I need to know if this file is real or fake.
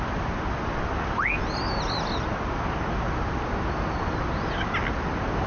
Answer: real